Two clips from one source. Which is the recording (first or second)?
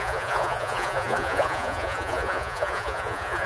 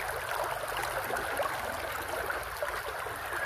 second